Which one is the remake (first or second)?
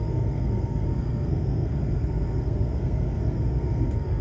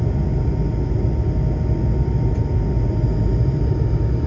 first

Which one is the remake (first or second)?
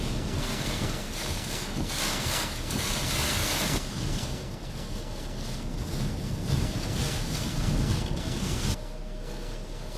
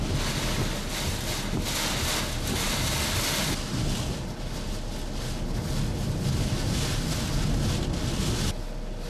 first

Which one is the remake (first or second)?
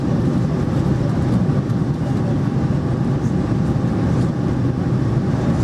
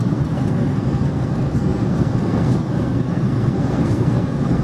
second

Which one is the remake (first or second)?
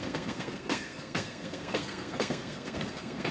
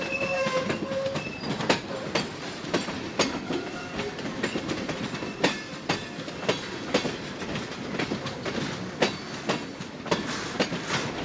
first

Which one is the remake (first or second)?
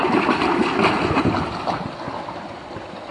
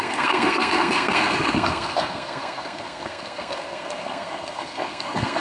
second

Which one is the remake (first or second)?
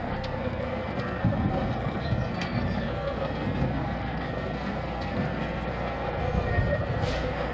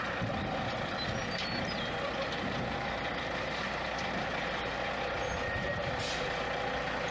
first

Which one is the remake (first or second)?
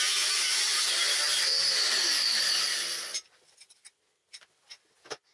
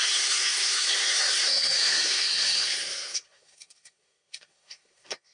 second